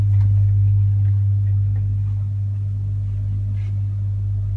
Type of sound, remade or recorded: recorded